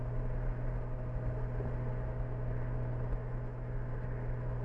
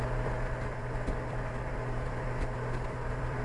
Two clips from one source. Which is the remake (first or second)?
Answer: second